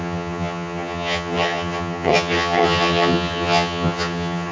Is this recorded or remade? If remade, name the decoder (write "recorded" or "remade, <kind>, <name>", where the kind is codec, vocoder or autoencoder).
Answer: remade, vocoder, HiFi-GAN